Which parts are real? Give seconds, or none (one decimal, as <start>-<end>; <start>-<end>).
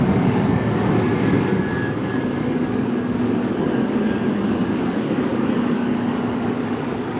none